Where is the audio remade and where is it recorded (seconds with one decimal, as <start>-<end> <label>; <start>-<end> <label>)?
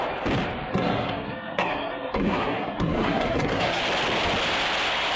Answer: 0.0-0.7 recorded; 0.7-3.8 remade; 3.8-5.2 recorded